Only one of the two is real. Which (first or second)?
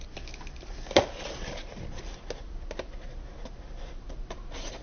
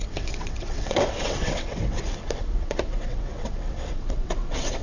first